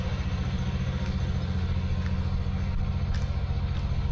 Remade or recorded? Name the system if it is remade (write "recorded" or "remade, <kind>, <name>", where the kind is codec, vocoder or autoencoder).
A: recorded